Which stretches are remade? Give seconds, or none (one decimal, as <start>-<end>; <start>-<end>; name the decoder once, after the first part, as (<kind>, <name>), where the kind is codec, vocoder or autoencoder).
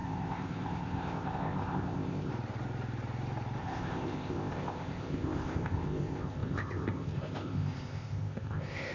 0.0-2.3 (codec, ZipCodec); 3.6-8.9